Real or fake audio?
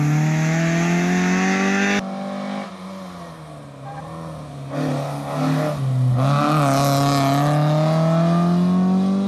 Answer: real